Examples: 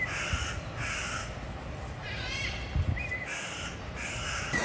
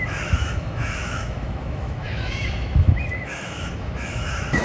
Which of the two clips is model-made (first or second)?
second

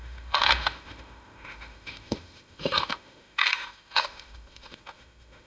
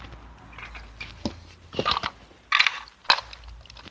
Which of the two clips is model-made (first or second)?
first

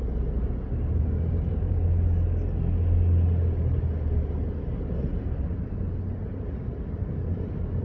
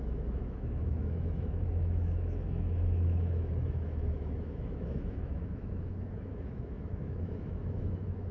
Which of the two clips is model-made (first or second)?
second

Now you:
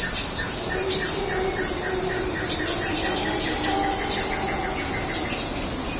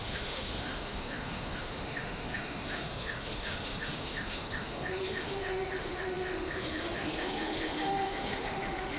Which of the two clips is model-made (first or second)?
second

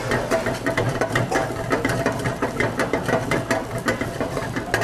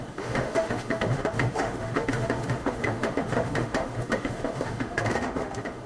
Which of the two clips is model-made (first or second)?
second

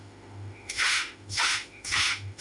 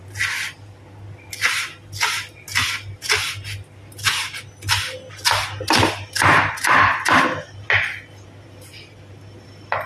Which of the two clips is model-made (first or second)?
first